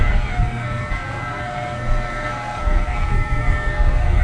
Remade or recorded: remade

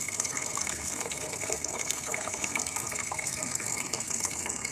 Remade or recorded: remade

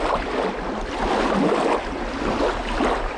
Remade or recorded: recorded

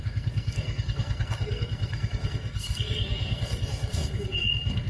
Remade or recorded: remade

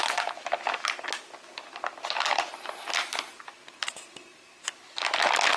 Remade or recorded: recorded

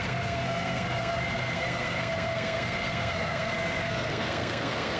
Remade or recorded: remade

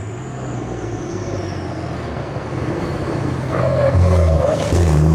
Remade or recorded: remade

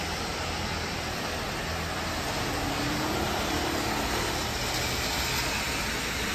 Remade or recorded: recorded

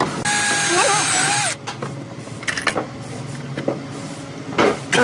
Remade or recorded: recorded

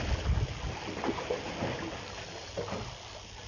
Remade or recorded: recorded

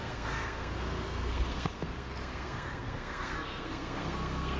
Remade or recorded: remade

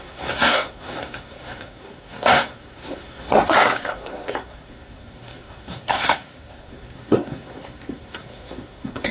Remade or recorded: remade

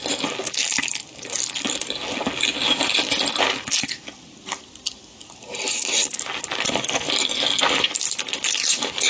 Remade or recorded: recorded